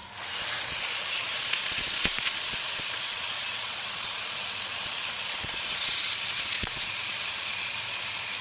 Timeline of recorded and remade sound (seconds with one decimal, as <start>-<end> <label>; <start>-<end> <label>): 0.0-0.7 recorded; 0.7-8.4 remade